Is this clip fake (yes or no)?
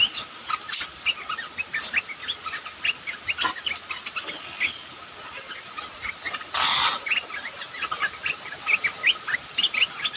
no